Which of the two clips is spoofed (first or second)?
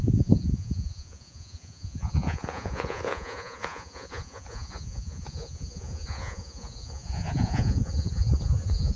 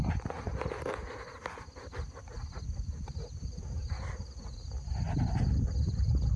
first